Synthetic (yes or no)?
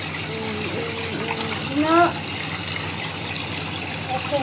no